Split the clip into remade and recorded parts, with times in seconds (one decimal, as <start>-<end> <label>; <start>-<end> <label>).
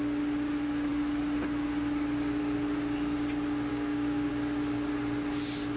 0.0-3.7 recorded; 3.7-4.3 remade; 4.3-5.8 recorded